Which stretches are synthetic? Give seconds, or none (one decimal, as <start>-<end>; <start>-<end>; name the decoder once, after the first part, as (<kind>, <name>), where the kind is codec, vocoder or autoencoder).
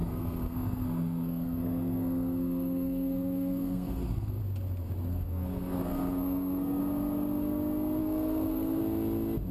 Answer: 0.0-4.4 (codec, SNAC); 5.1-6.8; 8.0-8.8